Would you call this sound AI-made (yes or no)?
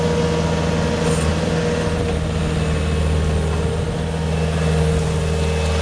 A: no